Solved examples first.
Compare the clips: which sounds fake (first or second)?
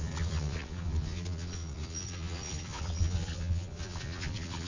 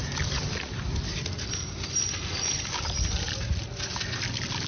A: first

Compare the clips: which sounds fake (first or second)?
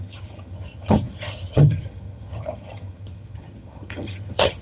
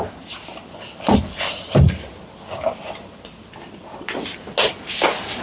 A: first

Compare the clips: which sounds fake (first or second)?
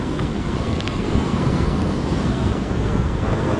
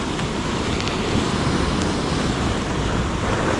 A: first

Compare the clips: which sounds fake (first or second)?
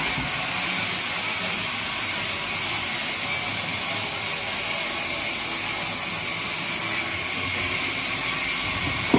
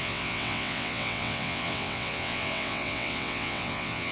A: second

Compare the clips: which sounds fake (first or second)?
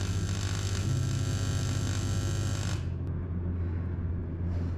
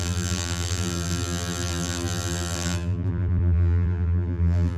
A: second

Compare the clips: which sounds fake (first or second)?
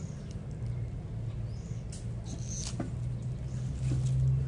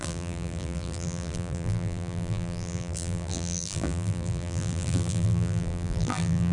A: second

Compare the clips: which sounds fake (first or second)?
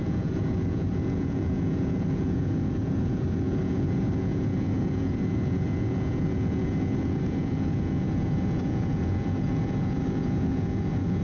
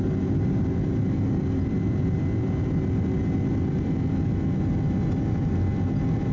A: first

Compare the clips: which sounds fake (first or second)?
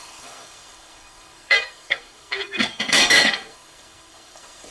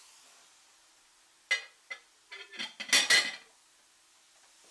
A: first